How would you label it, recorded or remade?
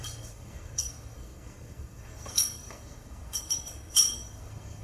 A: remade